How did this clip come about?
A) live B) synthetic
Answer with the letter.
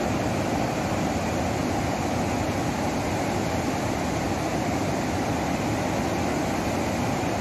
A